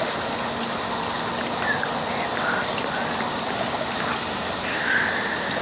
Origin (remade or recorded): recorded